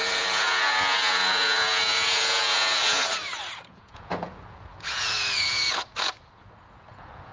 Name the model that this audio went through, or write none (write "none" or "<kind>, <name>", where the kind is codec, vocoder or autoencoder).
vocoder, Vocos